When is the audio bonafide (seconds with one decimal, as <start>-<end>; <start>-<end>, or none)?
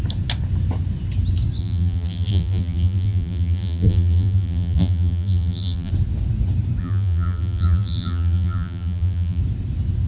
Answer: 0.0-1.6; 5.9-6.8; 9.4-10.1